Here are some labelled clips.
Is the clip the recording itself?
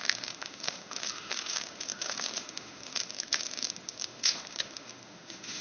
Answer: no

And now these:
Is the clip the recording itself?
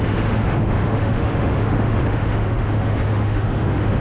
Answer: no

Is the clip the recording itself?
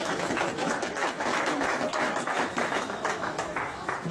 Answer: no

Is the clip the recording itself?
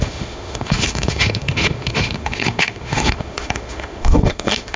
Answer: no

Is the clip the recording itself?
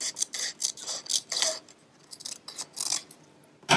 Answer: yes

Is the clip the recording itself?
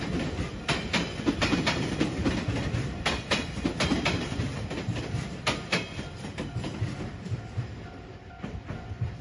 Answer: yes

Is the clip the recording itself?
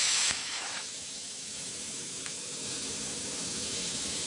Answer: no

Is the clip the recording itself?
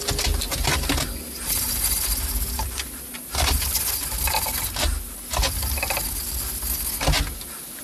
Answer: yes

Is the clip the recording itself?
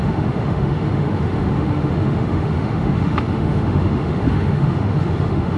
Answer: no